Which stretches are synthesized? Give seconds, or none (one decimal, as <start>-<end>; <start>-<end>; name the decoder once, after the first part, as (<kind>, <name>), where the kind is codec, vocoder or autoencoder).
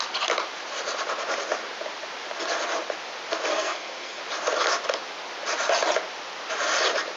3.5-4.2 (codec, SNAC)